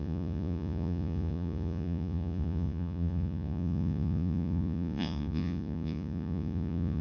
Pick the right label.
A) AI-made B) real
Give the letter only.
A